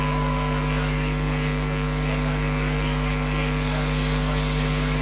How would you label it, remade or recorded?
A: remade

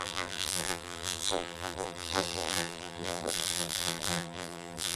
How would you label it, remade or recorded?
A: remade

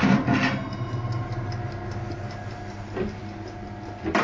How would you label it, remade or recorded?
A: recorded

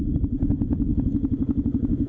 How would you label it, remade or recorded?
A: recorded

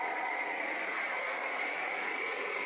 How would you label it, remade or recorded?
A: remade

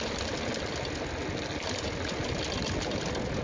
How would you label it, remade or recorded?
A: recorded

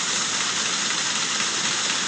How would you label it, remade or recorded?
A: recorded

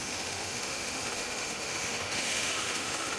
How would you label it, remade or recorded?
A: remade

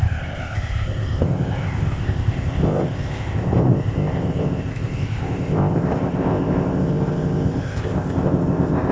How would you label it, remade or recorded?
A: remade